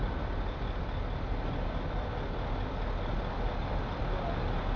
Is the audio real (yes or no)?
yes